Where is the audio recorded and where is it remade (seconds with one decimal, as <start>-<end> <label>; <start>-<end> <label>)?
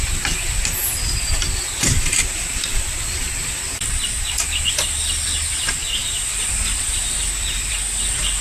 0.0-6.0 recorded; 6.0-7.7 remade; 7.7-8.4 recorded